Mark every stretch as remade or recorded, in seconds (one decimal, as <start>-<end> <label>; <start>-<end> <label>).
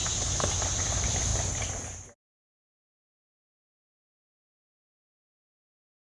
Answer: 0.0-6.0 recorded